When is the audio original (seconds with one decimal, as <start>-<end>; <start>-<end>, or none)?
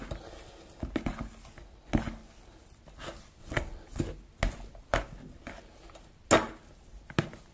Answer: 0.0-3.4; 4.0-7.5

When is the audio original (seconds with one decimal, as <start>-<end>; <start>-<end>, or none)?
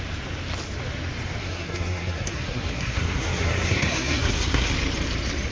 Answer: 0.0-1.4; 4.7-5.5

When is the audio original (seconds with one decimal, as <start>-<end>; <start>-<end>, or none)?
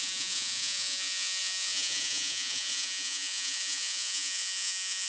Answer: none